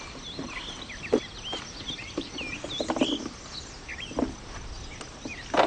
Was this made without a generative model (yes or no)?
yes